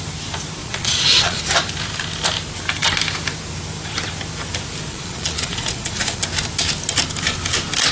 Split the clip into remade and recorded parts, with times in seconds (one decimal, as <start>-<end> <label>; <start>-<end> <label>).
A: 0.0-0.6 recorded; 0.6-1.4 remade; 1.4-4.9 recorded; 4.9-6.2 remade; 6.2-7.9 recorded